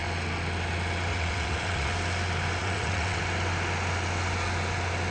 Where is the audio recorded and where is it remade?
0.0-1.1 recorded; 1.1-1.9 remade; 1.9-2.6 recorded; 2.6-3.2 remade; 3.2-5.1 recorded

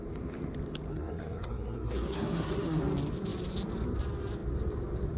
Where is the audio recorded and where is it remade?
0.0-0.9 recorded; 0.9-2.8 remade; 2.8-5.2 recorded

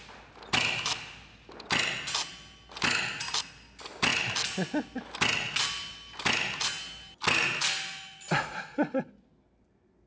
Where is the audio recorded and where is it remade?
0.0-10.1 recorded